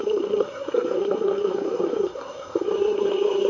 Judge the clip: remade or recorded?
remade